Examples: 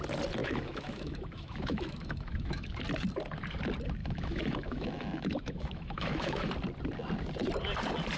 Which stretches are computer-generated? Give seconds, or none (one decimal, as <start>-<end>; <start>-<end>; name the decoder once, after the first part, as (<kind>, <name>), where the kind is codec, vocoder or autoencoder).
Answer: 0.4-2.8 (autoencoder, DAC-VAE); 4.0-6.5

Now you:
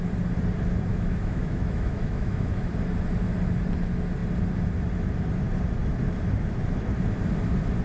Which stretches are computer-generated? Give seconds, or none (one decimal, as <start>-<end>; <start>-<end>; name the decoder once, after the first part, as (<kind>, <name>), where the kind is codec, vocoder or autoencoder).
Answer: 0.9-2.7 (autoencoder, DAC-VAE)

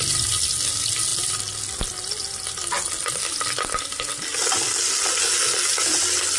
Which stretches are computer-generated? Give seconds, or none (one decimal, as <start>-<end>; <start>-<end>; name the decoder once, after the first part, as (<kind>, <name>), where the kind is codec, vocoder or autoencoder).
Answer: none